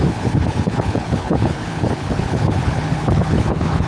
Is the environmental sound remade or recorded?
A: remade